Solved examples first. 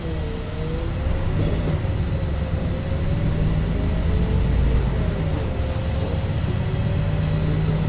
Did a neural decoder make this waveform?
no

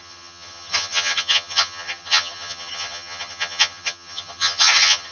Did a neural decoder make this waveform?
yes